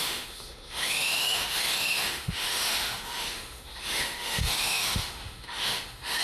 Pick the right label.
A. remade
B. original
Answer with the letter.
A